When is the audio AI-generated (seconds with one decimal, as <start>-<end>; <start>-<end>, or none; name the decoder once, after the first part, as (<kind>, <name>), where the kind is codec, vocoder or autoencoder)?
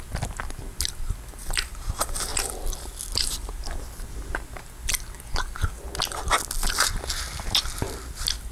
none